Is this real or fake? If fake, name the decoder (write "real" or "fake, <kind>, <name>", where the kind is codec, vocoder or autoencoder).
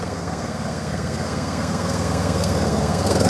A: fake, codec, SNAC